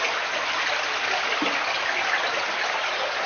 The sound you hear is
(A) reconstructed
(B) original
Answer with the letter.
B